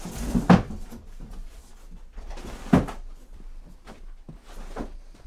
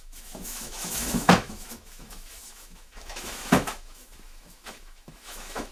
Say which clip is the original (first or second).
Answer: first